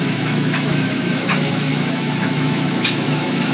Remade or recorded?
remade